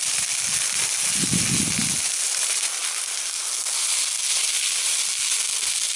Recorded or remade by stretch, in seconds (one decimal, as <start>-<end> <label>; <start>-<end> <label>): 0.0-6.0 recorded